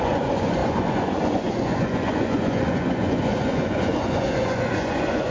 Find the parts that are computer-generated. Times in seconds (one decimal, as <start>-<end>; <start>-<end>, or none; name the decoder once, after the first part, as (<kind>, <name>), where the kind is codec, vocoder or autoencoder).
0.0-5.3 (vocoder, Vocos)

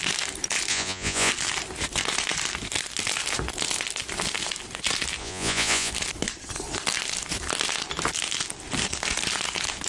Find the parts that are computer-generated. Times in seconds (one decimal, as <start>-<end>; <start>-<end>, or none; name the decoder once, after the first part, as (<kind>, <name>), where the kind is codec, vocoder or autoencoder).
0.7-1.3 (vocoder, Vocos); 5.2-5.9

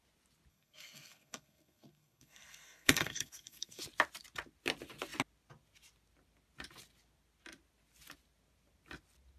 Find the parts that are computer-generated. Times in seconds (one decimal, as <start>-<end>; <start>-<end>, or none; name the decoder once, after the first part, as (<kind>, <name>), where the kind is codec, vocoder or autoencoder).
0.5-3.8 (codec, SNAC)